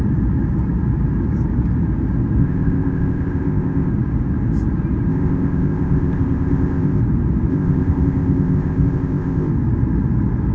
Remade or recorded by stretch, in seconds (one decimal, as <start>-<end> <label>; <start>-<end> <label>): 0.0-2.4 recorded; 2.4-3.9 remade; 3.9-5.1 recorded; 5.1-7.0 remade; 7.0-7.5 recorded; 7.5-9.5 remade; 9.5-10.5 recorded